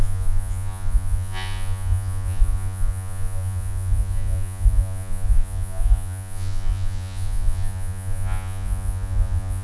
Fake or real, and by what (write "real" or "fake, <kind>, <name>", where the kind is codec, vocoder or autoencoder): fake, vocoder, Vocos